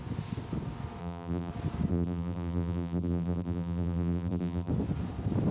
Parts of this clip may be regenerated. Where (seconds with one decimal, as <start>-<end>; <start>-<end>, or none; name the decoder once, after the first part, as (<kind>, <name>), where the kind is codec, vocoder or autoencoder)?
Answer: 1.0-1.5 (vocoder, BigVGAN v2); 1.9-4.7